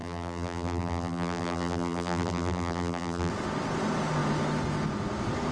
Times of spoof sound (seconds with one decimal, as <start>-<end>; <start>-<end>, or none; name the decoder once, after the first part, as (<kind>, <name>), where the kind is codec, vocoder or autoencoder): 0.0-3.3 (vocoder, BigVGAN v2)